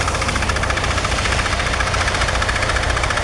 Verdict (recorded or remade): recorded